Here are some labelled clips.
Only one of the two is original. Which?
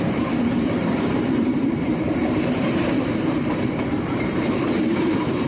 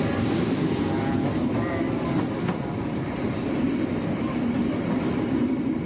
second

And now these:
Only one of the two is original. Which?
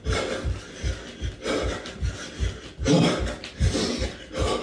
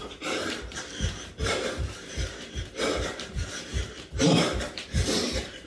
first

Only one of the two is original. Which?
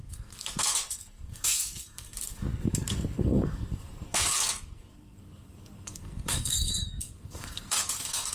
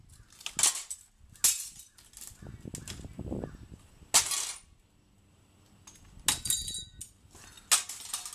second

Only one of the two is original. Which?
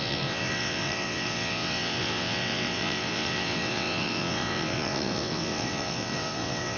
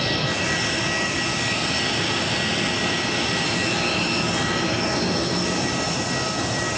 second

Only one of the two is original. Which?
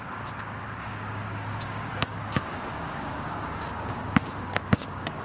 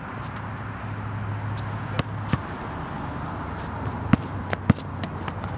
second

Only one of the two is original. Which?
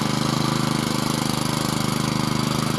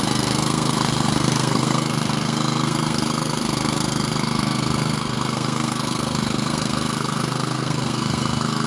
first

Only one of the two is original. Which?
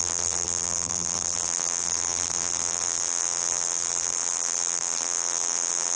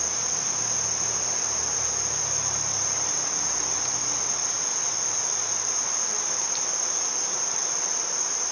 second